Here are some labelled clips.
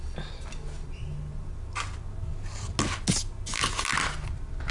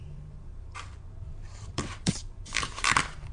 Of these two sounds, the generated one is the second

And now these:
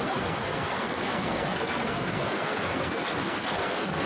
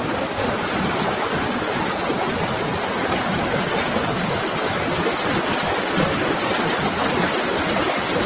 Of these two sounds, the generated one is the first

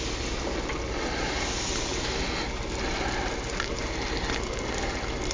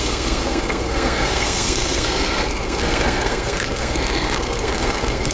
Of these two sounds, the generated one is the second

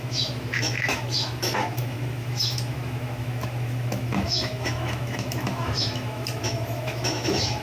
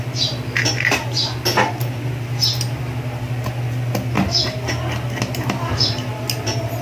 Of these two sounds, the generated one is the first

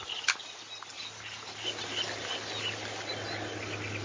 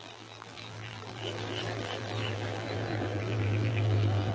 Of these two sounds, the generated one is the second